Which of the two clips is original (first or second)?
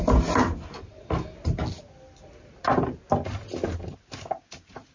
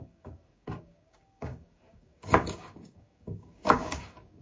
first